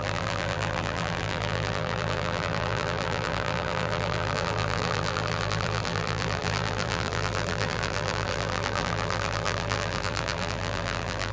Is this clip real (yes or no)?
no